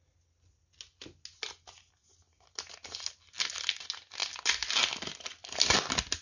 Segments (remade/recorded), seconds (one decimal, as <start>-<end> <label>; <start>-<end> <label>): 0.0-6.2 recorded